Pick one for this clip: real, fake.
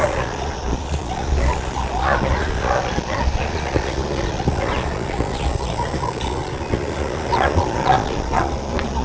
fake